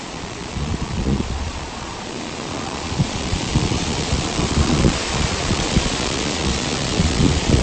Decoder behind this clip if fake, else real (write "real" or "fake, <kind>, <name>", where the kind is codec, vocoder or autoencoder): fake, vocoder, Vocos